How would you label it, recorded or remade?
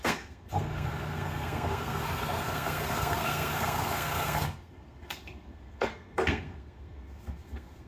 remade